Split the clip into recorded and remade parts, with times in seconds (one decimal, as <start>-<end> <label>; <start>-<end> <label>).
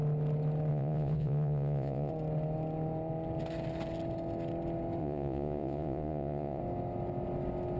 0.0-0.7 recorded; 0.7-2.1 remade; 2.1-5.0 recorded; 5.0-6.6 remade; 6.6-7.8 recorded